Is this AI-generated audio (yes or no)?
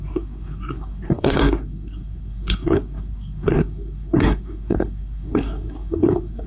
yes